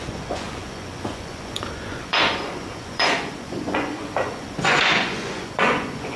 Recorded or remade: remade